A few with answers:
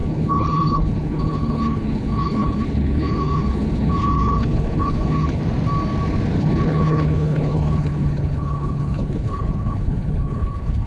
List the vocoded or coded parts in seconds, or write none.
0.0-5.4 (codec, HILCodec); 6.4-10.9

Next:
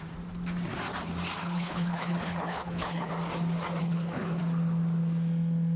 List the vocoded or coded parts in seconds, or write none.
1.4-3.1 (codec, HILCodec); 3.8-4.4

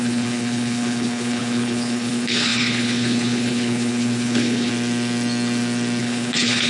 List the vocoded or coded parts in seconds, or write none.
0.0-4.7 (codec, HILCodec); 6.0-6.7

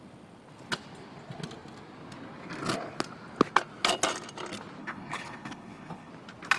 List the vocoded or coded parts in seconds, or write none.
4.8-6.1 (codec, HILCodec)

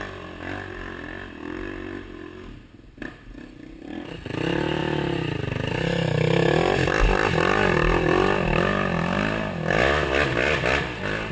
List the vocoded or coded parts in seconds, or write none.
none

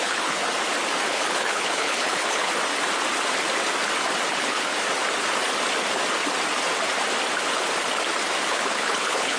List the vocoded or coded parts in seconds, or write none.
0.0-0.4 (codec, HILCodec); 1.1-2.5; 4.3-4.7; 8.5-9.4

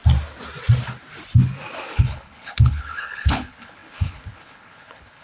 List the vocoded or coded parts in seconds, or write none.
1.9-5.2 (codec, HILCodec)